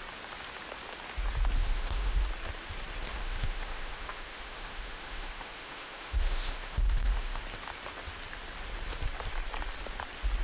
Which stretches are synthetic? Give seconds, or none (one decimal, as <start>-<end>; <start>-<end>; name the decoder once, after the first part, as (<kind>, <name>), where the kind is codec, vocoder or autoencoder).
1.6-2.2 (autoencoder, DAC-VAE); 3.1-7.4